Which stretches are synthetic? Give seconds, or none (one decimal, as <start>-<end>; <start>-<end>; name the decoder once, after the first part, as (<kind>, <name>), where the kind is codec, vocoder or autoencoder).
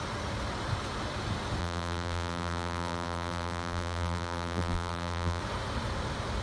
1.6-5.4 (vocoder, BigVGAN v2)